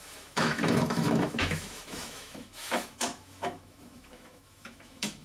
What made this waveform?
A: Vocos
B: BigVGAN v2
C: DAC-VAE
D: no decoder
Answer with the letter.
C